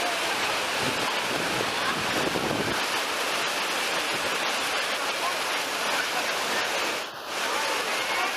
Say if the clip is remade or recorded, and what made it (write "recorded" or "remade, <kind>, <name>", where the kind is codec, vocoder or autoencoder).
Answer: recorded